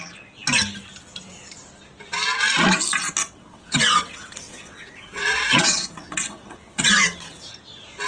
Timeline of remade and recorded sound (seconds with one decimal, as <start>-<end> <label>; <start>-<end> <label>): 0.0-3.2 recorded; 3.2-7.4 remade; 7.4-8.1 recorded